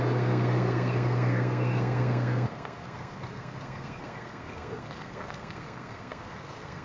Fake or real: fake